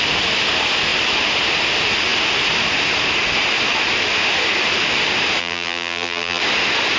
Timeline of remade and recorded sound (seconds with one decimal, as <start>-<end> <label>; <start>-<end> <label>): 0.0-5.4 recorded; 5.4-6.4 remade; 6.4-7.0 recorded